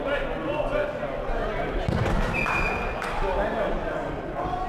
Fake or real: real